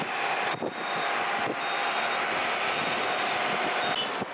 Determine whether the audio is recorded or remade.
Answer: recorded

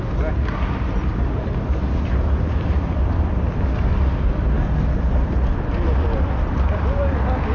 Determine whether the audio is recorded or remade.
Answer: recorded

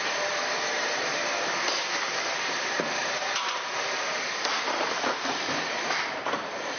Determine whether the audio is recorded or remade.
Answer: remade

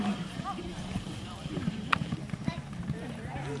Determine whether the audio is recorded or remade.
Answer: remade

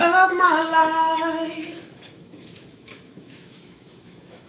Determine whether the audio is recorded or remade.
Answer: remade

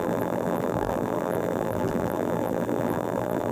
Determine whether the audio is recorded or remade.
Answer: remade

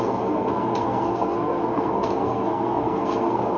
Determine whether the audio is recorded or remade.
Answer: remade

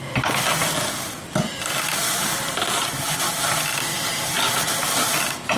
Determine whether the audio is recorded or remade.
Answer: recorded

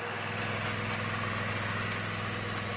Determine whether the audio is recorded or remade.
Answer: recorded